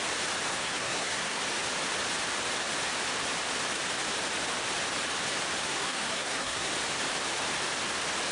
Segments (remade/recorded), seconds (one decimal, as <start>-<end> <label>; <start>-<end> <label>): 0.0-0.5 recorded; 0.5-1.4 remade; 1.4-5.6 recorded; 5.6-6.7 remade; 6.7-8.3 recorded